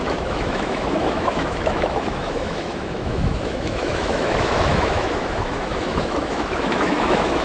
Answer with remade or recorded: remade